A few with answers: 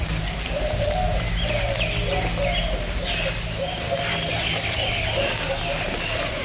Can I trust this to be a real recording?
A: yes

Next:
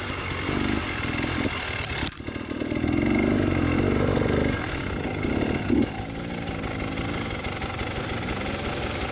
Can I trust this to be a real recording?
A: yes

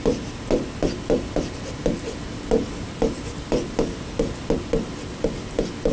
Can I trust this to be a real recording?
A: yes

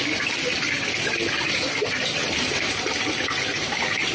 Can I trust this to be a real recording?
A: yes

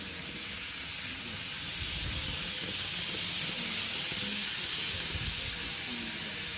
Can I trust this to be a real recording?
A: yes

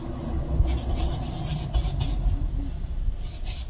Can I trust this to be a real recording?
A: yes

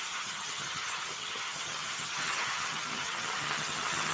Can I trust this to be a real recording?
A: no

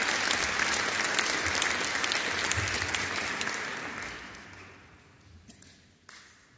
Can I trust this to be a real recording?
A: yes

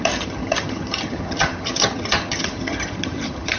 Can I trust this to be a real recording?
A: no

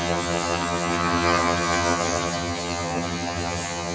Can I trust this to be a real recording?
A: no